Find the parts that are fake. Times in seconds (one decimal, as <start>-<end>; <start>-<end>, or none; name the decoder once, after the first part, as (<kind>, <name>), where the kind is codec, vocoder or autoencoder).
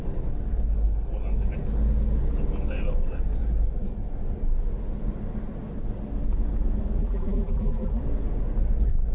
7.0-8.0 (vocoder, BigVGAN v2)